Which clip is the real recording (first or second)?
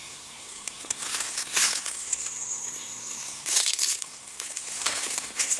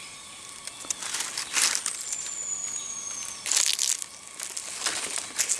second